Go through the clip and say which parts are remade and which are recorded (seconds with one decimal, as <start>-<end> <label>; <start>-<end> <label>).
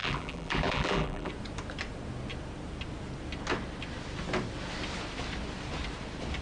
0.0-1.3 remade; 1.3-6.4 recorded